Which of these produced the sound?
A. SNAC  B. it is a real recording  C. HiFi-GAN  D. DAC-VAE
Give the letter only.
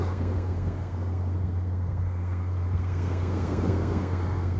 A